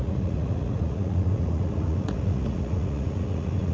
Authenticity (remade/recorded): remade